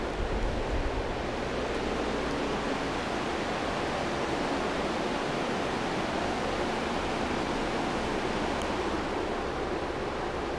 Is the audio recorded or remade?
recorded